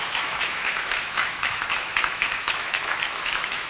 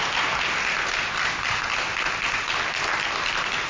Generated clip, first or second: first